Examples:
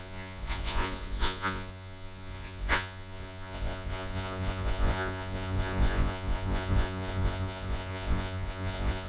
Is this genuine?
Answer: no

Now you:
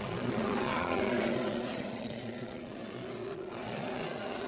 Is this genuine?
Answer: no